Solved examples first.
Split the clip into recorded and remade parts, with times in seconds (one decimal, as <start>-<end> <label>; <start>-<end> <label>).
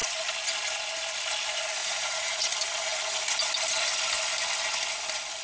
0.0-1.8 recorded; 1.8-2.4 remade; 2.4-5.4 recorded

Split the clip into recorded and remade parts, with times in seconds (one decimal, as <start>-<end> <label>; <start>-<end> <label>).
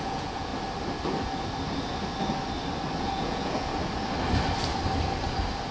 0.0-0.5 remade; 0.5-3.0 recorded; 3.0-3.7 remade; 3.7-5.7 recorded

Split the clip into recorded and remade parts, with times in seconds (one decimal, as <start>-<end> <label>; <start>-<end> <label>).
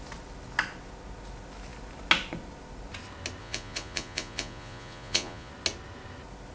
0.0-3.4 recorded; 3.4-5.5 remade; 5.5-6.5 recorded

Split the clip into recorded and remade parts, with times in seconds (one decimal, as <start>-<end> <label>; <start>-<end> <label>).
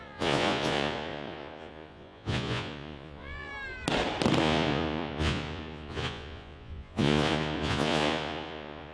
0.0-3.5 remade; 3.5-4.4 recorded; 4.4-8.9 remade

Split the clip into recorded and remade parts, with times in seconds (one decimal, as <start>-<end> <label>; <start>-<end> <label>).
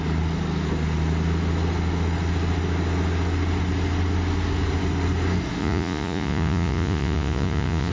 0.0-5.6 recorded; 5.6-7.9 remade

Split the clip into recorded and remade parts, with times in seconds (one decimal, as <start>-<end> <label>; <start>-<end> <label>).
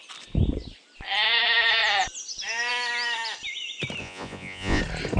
0.0-4.0 recorded; 4.0-4.8 remade; 4.8-5.2 recorded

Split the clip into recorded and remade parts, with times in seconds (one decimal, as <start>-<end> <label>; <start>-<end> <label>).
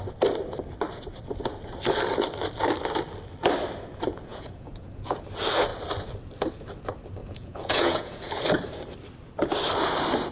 0.0-4.3 recorded; 4.3-5.2 remade; 5.2-7.2 recorded; 7.2-8.4 remade; 8.4-10.3 recorded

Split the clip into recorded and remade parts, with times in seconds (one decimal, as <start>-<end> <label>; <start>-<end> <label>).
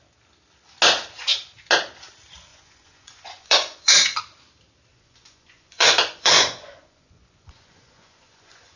0.0-2.5 recorded; 2.5-4.2 remade; 4.2-4.9 recorded; 4.9-8.8 remade